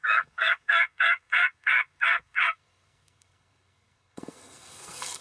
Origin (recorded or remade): remade